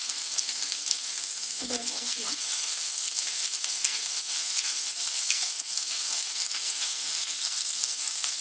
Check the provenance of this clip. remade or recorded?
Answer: remade